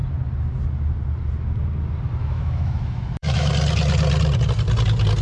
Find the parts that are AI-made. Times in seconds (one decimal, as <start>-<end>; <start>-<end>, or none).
2.2-3.5